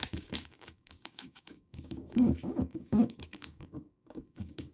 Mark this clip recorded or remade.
remade